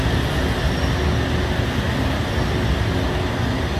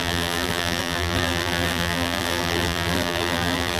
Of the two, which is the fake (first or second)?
second